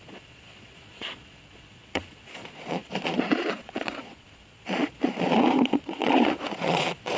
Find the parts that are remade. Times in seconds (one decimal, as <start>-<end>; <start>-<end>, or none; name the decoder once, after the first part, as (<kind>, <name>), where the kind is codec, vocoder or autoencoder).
0.0-7.2 (vocoder, Vocos)